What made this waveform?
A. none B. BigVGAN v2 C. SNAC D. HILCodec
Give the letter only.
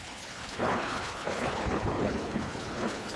D